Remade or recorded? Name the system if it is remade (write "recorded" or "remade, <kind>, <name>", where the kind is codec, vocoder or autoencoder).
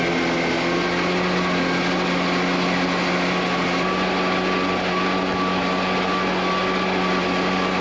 recorded